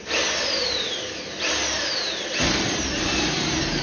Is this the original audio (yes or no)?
yes